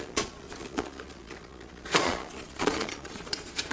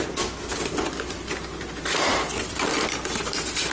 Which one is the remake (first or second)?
first